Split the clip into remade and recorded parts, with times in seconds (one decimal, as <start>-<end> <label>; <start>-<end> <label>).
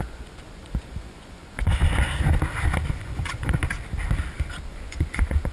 0.0-1.8 remade; 1.8-2.9 recorded; 2.9-3.6 remade; 3.6-4.7 recorded; 4.7-5.5 remade